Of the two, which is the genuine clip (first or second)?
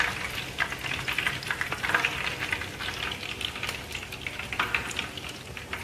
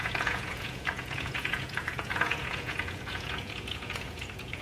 first